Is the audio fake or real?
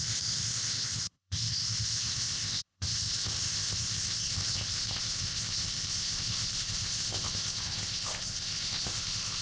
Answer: fake